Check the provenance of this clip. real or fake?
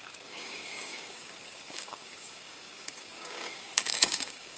fake